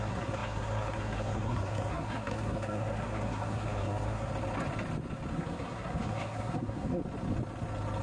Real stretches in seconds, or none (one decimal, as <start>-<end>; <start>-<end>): 4.3-5.3; 7.0-8.0